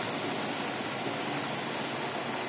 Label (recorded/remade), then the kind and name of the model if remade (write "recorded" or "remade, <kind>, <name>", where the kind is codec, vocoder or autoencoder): recorded